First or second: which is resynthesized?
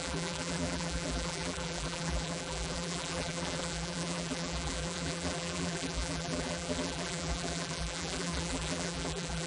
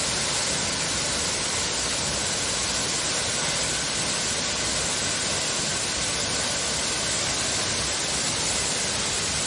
first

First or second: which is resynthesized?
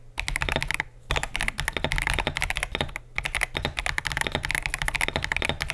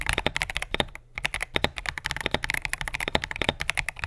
second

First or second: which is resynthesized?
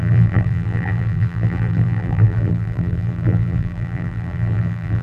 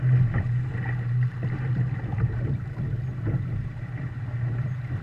first